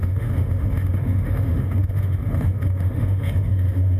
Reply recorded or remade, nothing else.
remade